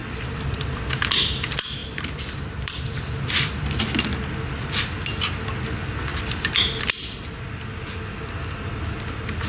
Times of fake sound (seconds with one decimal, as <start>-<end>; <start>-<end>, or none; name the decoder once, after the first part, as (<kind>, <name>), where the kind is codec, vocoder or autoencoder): 0.0-0.8 (vocoder, BigVGAN v2); 1.8-3.8; 6.1-6.9